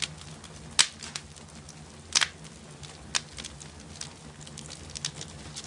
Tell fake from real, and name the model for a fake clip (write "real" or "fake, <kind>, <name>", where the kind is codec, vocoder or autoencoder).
real